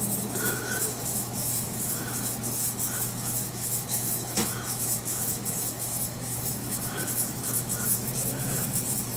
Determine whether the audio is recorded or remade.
remade